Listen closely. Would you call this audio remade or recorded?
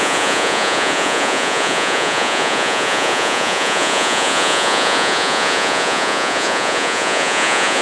remade